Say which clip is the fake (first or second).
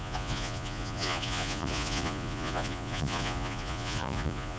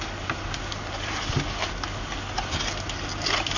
first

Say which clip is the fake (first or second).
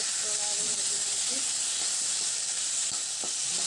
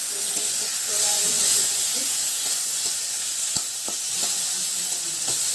second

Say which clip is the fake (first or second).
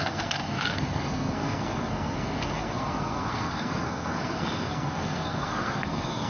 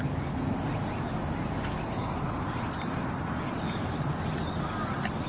first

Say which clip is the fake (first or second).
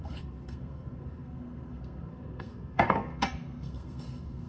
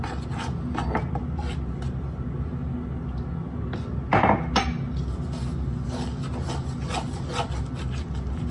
first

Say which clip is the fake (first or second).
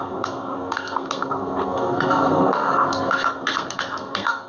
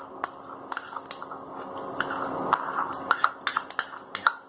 first